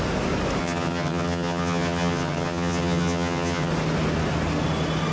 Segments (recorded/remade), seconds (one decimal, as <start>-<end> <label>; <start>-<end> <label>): 0.0-0.6 recorded; 0.6-3.7 remade; 3.7-5.1 recorded